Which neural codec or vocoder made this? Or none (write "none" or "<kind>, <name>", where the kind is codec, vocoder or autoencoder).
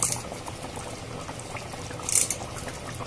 none